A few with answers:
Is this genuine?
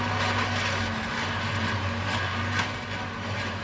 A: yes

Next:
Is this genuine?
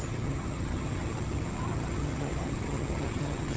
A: no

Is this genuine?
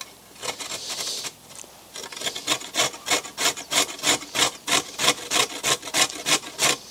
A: yes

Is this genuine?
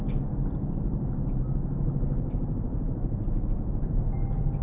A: yes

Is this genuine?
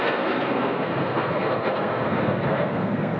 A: no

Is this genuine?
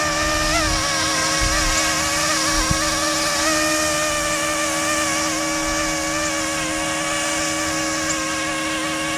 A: yes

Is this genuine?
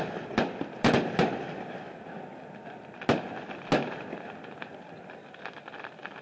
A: yes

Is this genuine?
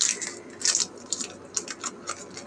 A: yes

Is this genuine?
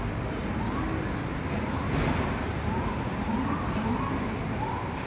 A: yes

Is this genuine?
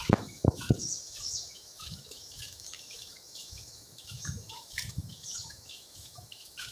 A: no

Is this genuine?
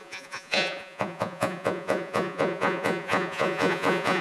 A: no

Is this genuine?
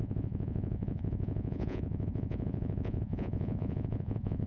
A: no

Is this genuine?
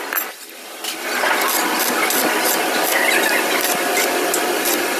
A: yes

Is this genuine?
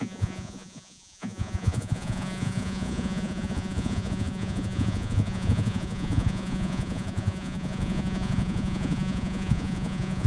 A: no